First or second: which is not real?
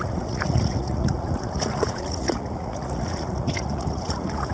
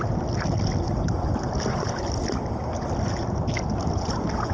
first